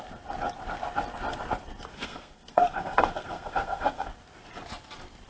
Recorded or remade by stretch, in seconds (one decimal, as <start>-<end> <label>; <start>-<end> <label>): 0.0-1.9 recorded; 1.9-4.1 remade; 4.1-5.3 recorded